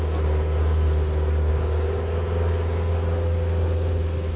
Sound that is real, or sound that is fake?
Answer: real